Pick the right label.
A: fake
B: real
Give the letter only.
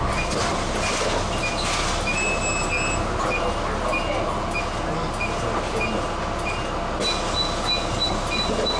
B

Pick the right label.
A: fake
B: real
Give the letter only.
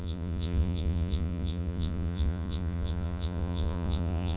A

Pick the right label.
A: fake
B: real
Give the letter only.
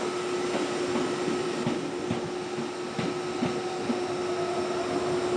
B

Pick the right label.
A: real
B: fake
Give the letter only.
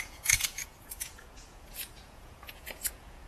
B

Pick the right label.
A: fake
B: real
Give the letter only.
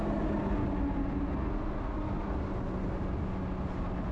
B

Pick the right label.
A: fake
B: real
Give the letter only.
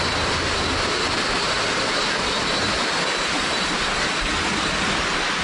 B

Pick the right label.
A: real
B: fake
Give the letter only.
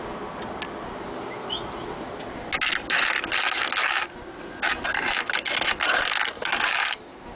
A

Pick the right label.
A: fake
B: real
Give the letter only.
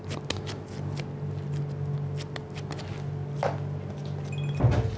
B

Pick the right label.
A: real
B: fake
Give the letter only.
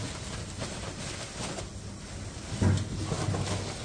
A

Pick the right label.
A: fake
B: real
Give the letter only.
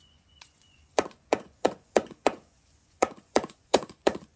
A